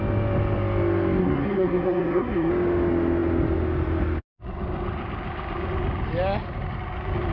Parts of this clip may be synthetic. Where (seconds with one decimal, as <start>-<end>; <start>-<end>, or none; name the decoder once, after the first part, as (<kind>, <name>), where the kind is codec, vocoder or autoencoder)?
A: 1.2-2.5 (codec, SNAC)